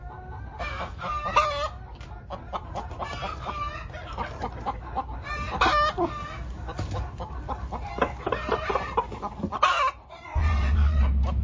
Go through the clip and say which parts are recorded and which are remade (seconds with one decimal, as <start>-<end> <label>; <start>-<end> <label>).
0.0-10.4 recorded; 10.4-11.0 remade; 11.0-11.4 recorded